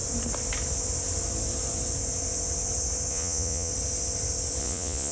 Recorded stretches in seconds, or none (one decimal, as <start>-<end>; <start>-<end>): 0.0-3.1; 3.7-4.6